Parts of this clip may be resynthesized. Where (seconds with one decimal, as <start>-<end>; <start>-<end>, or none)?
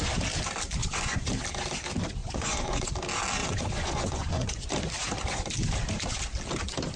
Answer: 0.8-1.3; 2.2-2.9; 3.4-4.7